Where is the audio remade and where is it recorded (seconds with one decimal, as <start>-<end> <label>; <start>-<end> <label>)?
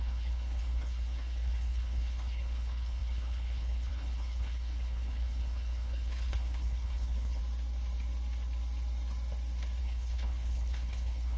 0.0-7.4 remade; 7.4-9.8 recorded; 9.8-11.4 remade